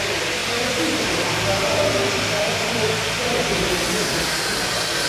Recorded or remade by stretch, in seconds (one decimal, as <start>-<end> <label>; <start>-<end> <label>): 0.0-5.1 remade